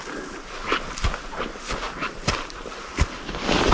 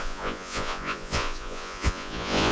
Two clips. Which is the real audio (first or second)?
first